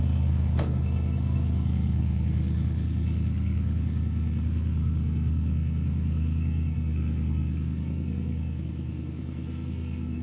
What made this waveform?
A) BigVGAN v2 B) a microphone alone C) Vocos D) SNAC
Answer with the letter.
D